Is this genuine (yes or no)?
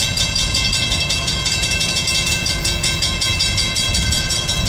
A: no